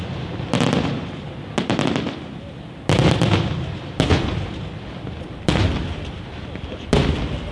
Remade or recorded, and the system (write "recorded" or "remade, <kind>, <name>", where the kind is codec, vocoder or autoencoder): recorded